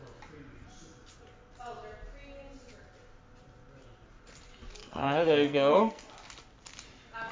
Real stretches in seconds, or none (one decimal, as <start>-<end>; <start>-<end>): 0.0-4.8; 6.1-7.3